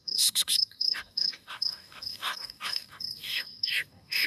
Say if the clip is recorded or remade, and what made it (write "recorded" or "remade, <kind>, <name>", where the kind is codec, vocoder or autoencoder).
remade, codec, DAC